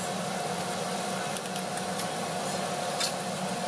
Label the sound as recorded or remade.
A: recorded